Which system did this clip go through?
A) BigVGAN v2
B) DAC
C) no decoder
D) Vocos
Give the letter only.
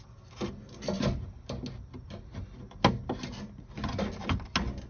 C